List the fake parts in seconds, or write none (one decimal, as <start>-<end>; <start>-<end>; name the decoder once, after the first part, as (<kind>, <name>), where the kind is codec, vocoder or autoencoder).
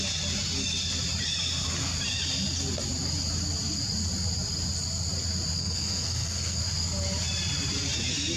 5.6-6.6 (codec, SNAC)